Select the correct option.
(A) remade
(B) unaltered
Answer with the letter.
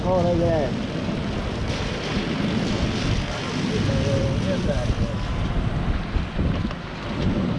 B